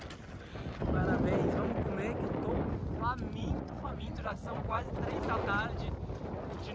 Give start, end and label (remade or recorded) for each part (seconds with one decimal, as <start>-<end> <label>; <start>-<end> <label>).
0.0-3.4 recorded; 3.4-4.9 remade; 4.9-6.7 recorded